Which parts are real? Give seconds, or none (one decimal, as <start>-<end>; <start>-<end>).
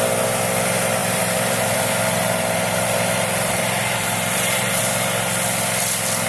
0.0-1.0; 4.8-6.3